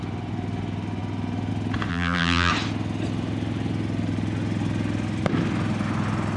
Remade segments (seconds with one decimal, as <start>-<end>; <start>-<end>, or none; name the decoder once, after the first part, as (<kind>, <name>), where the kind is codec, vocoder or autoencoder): 1.9-2.5 (vocoder, BigVGAN v2)

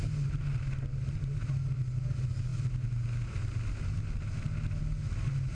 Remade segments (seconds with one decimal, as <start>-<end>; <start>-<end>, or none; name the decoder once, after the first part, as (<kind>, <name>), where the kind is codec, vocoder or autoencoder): none

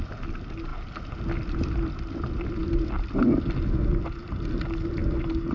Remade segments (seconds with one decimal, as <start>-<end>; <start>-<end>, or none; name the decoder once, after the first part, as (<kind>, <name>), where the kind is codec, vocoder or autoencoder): none

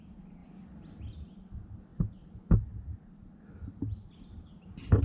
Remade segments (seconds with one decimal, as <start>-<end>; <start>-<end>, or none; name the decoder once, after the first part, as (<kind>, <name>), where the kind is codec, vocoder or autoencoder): none

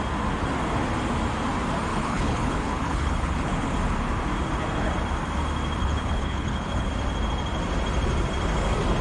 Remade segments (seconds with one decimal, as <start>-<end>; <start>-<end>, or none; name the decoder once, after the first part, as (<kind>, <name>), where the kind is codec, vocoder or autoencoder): 1.9-3.7 (codec, HILCodec); 5.8-6.9

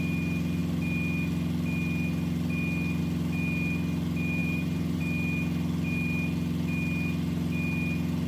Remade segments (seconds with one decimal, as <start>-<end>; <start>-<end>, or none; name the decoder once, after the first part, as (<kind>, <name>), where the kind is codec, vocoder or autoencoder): 4.4-5.0 (vocoder, BigVGAN v2)

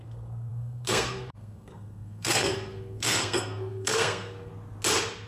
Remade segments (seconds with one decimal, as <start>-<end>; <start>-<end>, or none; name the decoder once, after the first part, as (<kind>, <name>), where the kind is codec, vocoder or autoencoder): 0.0-4.5 (codec, SNAC)

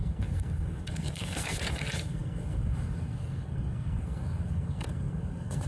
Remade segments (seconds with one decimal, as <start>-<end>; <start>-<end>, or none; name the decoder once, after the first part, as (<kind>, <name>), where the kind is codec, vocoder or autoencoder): 0.0-5.7 (codec, SNAC)